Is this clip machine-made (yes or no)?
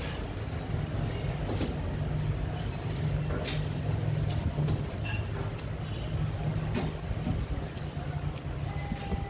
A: no